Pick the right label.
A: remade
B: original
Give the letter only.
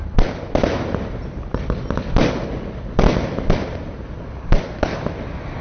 B